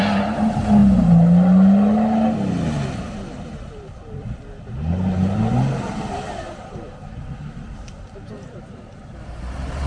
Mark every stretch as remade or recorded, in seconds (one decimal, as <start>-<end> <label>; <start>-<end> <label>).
0.0-0.8 remade; 0.8-2.7 recorded; 2.7-9.9 remade